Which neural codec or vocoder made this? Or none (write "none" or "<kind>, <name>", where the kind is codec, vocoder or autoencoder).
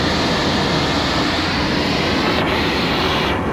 none